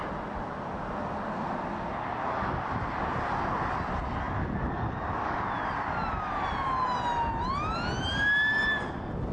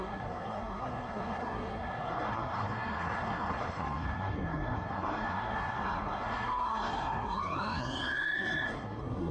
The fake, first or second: second